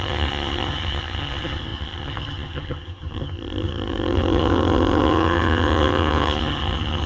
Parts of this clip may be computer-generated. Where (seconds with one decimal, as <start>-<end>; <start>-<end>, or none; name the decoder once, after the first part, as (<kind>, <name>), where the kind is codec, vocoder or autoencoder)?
0.0-7.1 (vocoder, HiFi-GAN)